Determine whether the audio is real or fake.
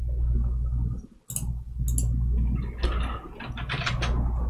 real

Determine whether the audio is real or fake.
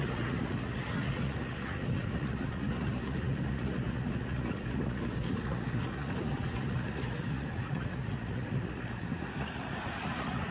fake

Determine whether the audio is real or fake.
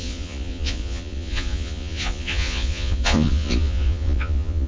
fake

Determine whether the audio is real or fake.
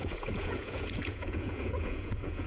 fake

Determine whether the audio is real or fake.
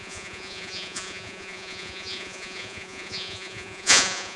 fake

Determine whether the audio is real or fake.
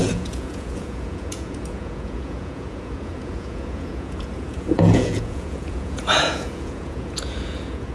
fake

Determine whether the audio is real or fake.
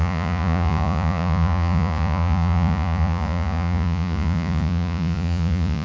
fake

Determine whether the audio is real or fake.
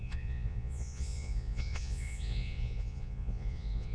fake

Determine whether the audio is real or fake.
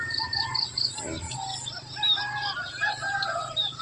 real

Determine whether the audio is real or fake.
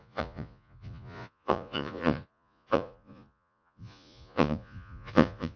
fake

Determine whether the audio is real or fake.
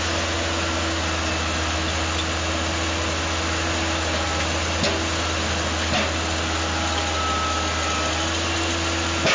real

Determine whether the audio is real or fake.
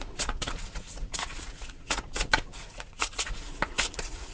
fake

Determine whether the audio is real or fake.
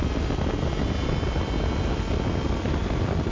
real